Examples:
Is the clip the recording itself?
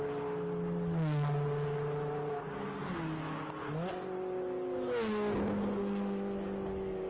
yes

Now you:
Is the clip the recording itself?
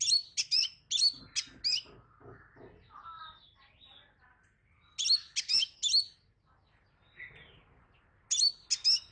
yes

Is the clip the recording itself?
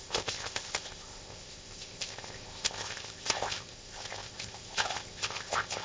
no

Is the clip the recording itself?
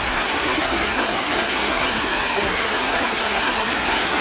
no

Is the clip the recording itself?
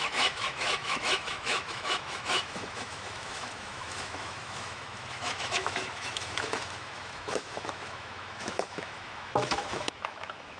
no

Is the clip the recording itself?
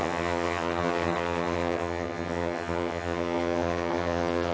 no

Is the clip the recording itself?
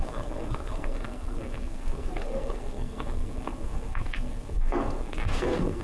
no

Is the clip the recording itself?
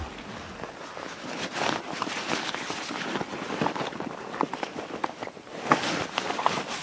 yes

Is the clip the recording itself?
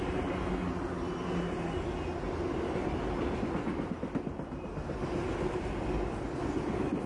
yes